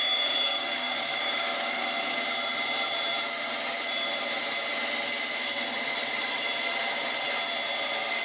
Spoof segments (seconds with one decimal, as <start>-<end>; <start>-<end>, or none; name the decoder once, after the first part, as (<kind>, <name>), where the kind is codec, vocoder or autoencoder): 0.0-1.8 (codec, DAC)